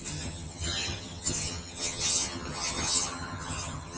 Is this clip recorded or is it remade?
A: remade